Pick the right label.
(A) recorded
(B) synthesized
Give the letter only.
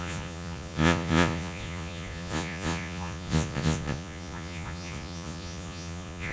B